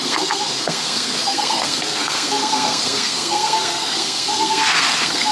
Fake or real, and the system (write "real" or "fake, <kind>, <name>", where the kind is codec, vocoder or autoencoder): fake, codec, SNAC